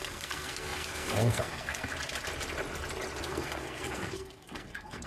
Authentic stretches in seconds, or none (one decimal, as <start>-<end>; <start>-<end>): 1.9-3.2